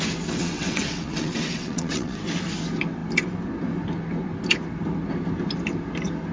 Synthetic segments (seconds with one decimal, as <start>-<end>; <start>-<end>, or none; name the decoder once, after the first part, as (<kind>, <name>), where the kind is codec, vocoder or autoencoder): 0.4-2.2 (vocoder, WaveNeXt)